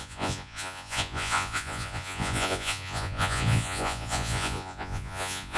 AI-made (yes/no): yes